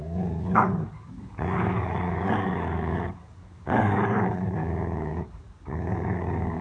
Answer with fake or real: fake